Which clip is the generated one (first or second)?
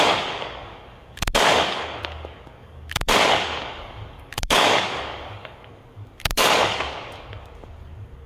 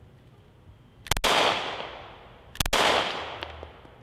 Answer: first